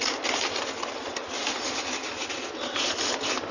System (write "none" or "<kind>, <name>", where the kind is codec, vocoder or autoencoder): none